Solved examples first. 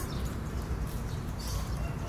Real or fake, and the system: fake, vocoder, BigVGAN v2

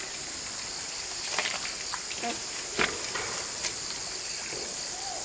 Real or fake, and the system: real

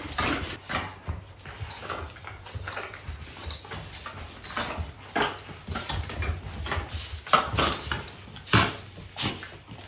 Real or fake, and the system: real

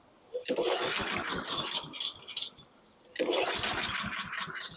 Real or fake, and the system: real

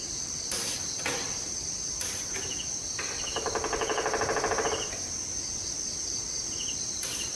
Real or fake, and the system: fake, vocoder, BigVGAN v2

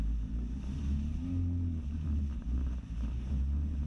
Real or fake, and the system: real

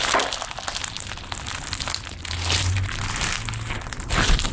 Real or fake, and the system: real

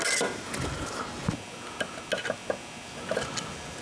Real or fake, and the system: real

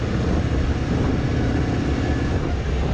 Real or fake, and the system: real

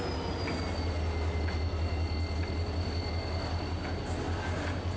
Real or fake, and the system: real